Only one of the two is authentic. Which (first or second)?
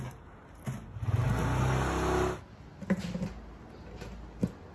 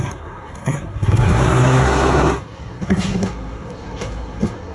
first